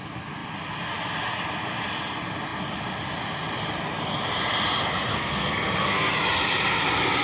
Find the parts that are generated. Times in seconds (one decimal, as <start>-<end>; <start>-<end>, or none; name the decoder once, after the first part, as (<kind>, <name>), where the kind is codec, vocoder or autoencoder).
5.1-6.1 (codec, SNAC)